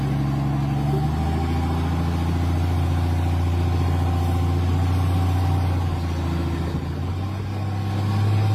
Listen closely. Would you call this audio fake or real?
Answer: real